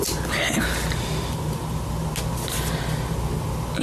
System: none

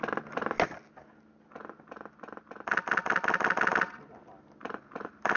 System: none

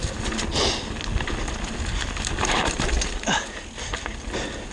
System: none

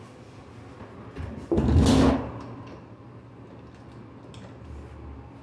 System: none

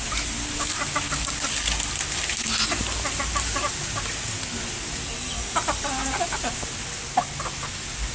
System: none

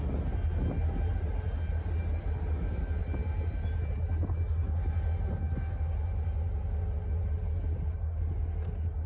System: none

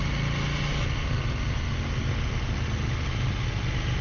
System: none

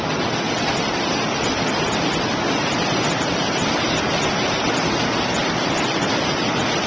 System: none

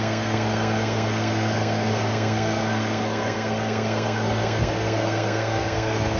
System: codec, SNAC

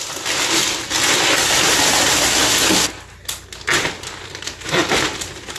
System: none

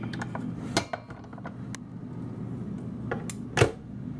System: none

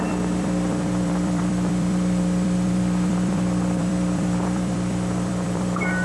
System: vocoder, BigVGAN v2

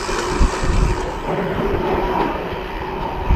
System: vocoder, BigVGAN v2